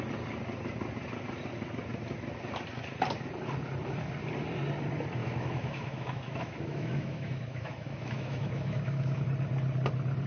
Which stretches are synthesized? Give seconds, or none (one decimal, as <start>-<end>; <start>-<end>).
5.2-9.2